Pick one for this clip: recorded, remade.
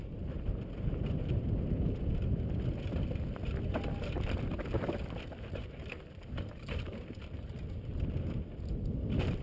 remade